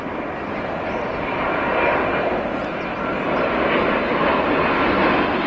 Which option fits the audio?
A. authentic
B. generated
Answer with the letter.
A